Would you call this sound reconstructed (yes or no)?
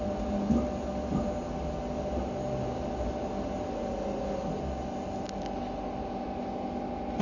no